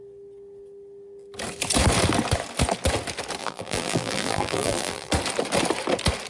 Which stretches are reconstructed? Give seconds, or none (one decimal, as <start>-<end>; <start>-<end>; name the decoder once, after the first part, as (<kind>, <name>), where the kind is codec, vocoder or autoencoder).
3.4-5.1 (vocoder, BigVGAN v2)